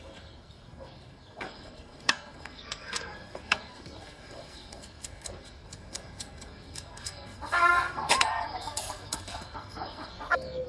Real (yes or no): no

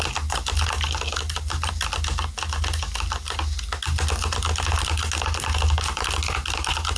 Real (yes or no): yes